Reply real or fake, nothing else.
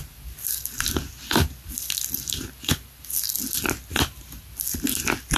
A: real